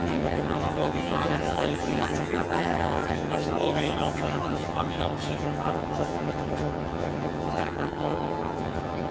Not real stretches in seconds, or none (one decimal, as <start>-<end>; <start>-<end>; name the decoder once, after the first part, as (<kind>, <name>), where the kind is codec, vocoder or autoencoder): 0.0-9.1 (vocoder, HiFi-GAN)